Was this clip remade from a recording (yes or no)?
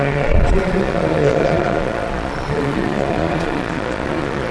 yes